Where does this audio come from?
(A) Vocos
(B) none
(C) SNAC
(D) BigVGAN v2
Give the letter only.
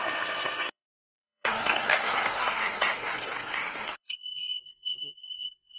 C